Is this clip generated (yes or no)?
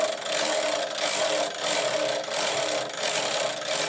no